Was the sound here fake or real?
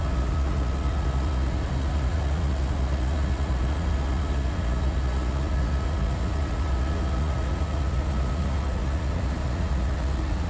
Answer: fake